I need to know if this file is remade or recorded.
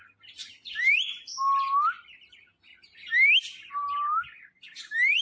recorded